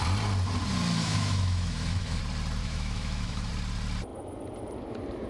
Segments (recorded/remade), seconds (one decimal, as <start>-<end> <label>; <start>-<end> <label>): 0.0-1.0 recorded; 1.0-2.2 remade; 2.2-2.6 recorded; 2.6-3.5 remade; 3.5-5.3 recorded